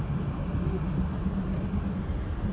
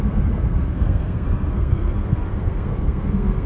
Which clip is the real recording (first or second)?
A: first